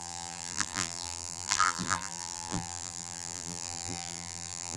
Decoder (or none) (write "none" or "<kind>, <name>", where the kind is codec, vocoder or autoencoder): vocoder, BigVGAN v2